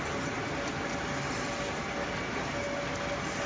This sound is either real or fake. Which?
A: real